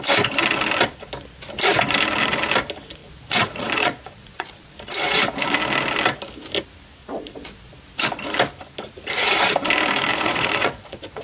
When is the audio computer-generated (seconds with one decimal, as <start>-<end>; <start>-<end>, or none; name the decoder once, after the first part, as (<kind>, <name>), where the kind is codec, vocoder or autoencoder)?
3.0-4.7 (vocoder, Vocos); 7.0-7.7; 10.1-11.2